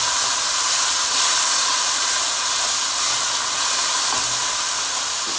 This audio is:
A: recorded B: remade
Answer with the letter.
A